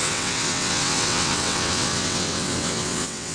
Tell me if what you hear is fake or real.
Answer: fake